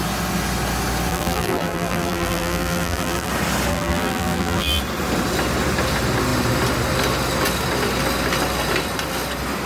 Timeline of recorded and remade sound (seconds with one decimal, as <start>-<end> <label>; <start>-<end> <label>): 0.0-1.1 recorded; 1.1-3.3 remade; 3.3-3.7 recorded; 3.7-4.8 remade; 4.8-9.7 recorded